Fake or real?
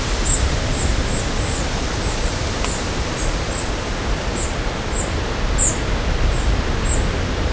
real